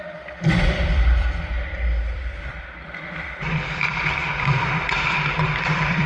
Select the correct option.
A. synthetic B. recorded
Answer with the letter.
A